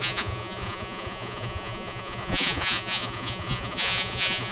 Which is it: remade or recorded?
remade